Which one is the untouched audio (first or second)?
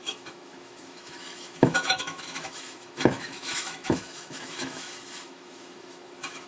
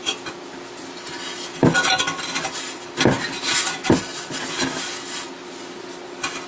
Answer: second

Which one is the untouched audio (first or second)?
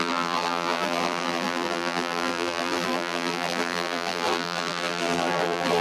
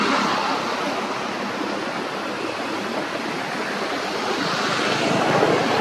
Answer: second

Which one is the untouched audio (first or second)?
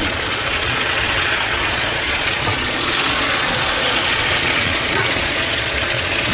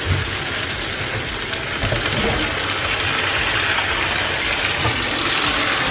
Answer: second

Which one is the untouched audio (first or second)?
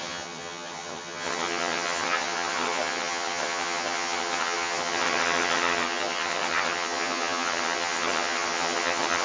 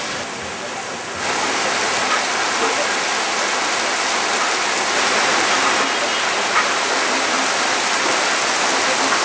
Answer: second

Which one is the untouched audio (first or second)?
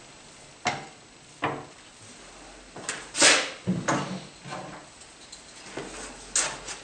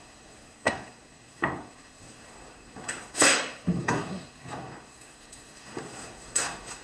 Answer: first